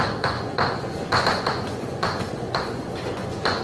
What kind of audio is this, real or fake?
fake